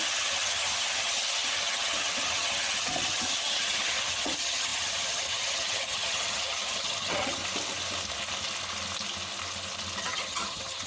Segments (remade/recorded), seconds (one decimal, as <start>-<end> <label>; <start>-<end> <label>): 0.0-7.4 remade; 7.4-10.0 recorded; 10.0-10.9 remade